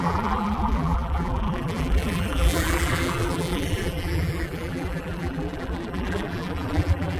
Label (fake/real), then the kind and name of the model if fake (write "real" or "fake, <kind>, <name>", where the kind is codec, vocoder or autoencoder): fake, vocoder, BigVGAN v2